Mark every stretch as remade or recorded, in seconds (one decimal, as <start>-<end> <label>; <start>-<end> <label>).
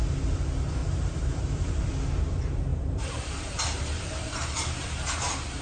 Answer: 0.0-0.8 recorded; 0.8-1.8 remade; 1.8-2.7 recorded; 2.7-5.6 remade